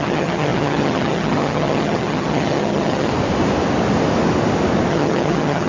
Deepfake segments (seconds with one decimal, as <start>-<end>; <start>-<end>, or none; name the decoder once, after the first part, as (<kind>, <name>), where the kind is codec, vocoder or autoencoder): 0.0-3.1 (vocoder, HiFi-GAN); 4.9-5.7